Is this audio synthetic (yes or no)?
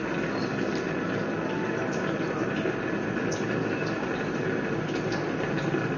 no